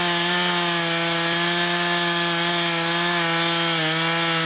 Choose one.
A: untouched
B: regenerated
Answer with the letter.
A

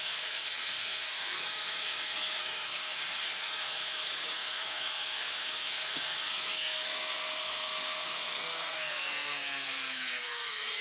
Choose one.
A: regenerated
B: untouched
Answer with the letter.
A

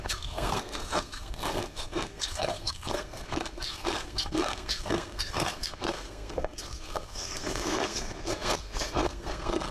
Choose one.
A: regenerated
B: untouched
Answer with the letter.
A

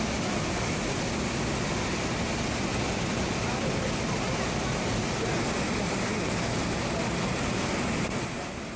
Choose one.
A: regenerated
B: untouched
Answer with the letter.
B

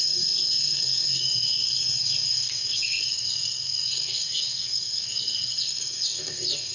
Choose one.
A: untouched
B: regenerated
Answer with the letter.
B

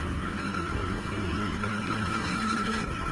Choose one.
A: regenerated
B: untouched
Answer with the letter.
A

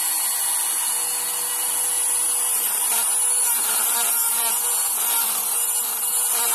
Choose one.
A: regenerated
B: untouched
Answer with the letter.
B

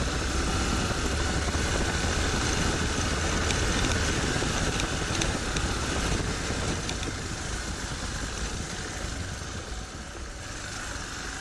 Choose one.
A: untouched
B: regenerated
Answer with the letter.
A